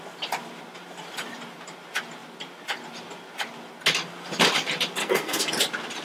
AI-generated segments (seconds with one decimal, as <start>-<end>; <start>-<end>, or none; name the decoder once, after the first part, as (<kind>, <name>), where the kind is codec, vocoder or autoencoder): 5.0-5.5 (codec, SNAC)